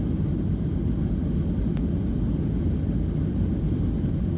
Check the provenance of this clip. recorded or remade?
recorded